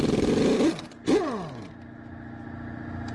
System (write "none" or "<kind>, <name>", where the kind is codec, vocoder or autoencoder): none